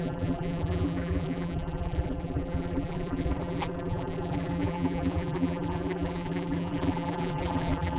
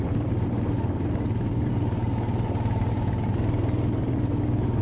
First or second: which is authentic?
second